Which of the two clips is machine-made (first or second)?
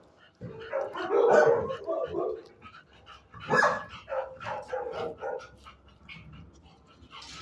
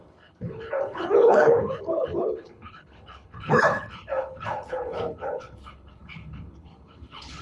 second